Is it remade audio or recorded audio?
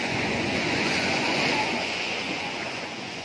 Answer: remade